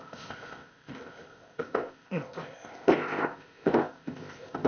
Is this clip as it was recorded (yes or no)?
no